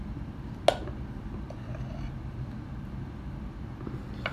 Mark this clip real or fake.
real